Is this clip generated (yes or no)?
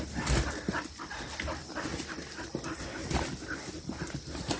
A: no